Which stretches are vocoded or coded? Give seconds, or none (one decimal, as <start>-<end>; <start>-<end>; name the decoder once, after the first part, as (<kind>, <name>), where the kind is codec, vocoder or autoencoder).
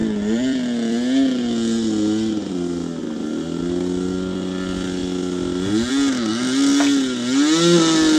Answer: 0.0-2.5 (vocoder, BigVGAN v2)